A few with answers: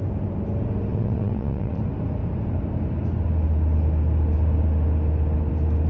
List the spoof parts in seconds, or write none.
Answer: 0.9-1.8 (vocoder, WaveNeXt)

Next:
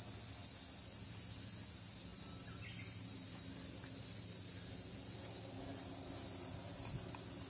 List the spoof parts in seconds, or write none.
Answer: none